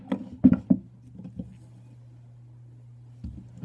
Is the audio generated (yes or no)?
no